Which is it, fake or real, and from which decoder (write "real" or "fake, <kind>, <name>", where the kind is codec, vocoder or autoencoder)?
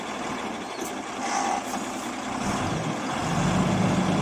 real